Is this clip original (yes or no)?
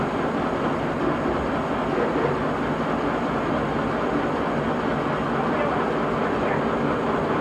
yes